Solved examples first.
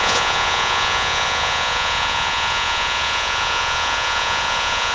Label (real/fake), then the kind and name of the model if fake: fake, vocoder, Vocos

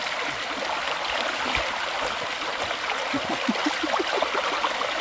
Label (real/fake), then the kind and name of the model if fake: real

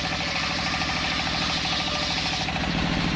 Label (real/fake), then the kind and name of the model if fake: real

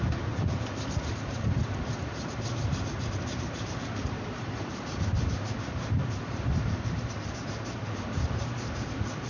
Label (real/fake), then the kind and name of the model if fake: fake, vocoder, BigVGAN v2